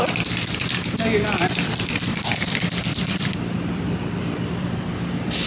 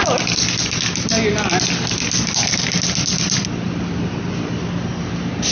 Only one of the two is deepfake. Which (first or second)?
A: first